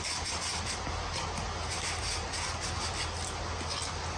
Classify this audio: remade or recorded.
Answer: recorded